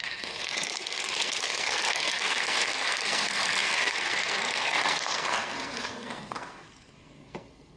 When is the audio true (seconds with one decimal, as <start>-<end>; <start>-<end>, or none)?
none